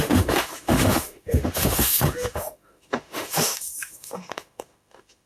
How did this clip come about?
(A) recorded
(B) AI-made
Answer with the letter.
B